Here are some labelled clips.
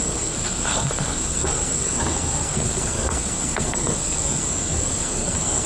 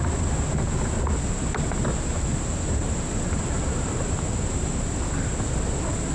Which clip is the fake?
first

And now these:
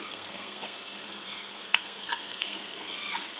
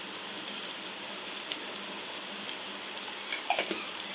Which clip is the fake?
first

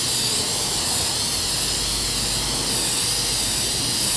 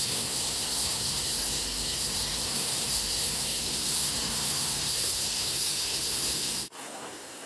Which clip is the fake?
second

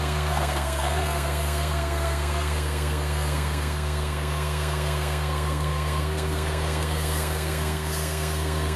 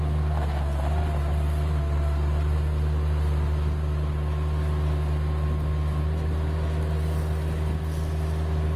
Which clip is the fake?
first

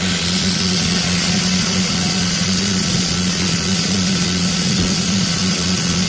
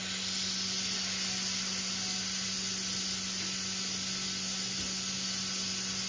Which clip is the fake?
first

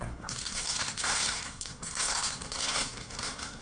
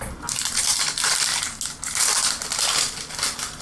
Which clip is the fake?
first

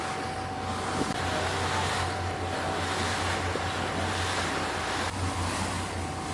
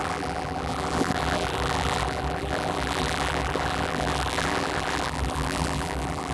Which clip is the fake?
second